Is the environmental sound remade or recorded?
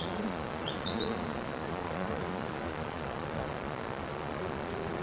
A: remade